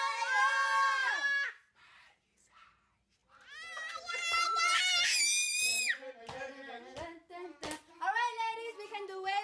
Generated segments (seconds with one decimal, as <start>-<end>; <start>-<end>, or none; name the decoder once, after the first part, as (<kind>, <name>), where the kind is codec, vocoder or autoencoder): 1.0-2.6 (vocoder, BigVGAN v2); 8.3-9.4